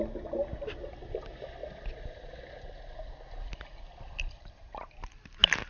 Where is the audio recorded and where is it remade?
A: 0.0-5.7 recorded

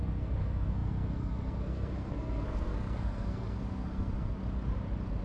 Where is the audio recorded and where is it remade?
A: 0.0-4.4 remade; 4.4-5.2 recorded

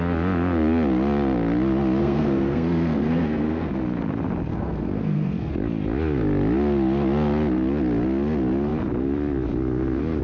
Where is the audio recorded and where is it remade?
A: 0.0-2.0 recorded; 2.0-3.7 remade; 3.7-4.5 recorded; 4.5-5.5 remade; 5.5-10.2 recorded

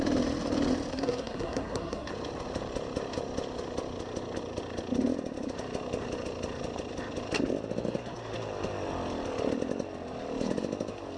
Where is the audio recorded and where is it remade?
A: 0.0-0.9 recorded; 0.9-2.1 remade; 2.1-11.2 recorded

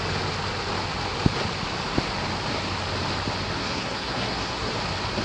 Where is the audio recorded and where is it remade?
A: 0.0-3.6 recorded; 3.6-4.7 remade; 4.7-5.2 recorded

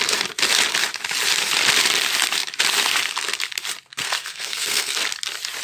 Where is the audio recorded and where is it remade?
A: 0.0-3.9 recorded; 3.9-5.0 remade; 5.0-5.6 recorded

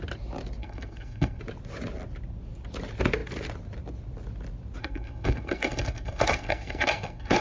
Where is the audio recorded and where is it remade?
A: 0.0-0.6 recorded; 0.6-1.4 remade; 1.4-4.8 recorded; 4.8-7.4 remade

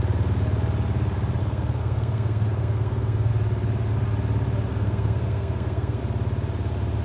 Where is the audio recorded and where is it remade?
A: 0.0-1.4 recorded; 1.4-3.3 remade; 3.3-4.7 recorded; 4.7-6.0 remade; 6.0-7.0 recorded